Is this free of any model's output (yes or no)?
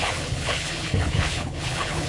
no